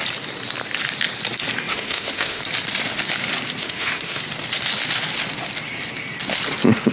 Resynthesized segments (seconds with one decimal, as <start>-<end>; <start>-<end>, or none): 1.7-2.4; 3.6-4.2